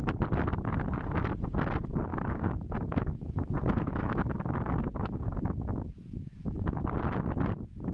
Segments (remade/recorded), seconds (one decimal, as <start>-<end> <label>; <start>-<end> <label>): 0.0-2.1 recorded; 2.1-6.8 remade; 6.8-7.9 recorded